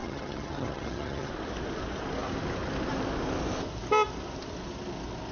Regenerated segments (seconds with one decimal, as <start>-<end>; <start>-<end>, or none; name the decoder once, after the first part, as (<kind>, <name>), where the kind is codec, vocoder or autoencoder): 0.0-1.3 (vocoder, HiFi-GAN)